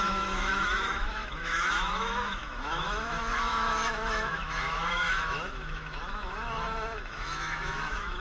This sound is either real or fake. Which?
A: fake